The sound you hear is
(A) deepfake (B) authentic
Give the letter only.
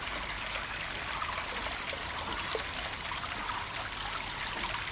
B